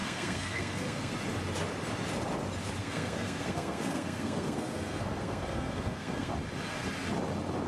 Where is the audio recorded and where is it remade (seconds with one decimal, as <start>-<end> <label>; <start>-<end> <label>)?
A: 0.0-1.1 remade; 1.1-2.8 recorded; 2.8-6.3 remade; 6.3-7.7 recorded